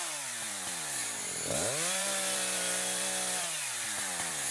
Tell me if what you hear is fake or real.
fake